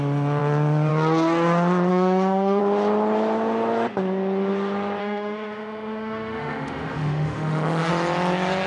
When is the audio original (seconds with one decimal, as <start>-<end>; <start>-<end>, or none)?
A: 0.0-1.9; 2.6-5.0; 7.9-8.7